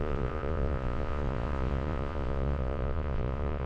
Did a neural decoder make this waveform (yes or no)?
yes